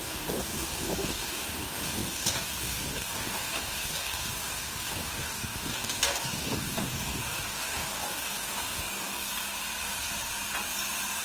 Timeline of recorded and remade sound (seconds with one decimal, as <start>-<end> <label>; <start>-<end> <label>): 0.0-9.3 remade; 9.3-11.2 recorded